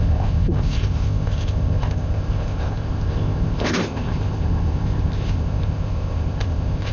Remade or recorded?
remade